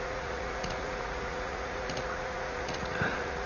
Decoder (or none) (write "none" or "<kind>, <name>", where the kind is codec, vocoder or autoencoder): vocoder, Vocos